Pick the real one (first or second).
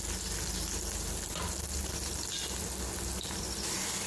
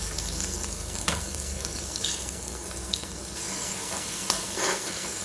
first